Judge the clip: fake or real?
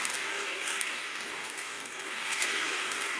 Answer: fake